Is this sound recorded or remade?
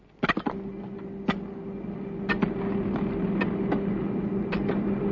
recorded